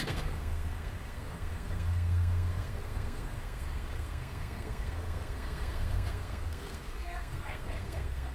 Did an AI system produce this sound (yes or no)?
yes